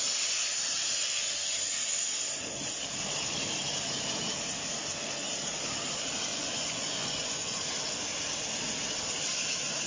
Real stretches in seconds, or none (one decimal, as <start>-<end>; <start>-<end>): 0.0-6.3; 7.6-9.9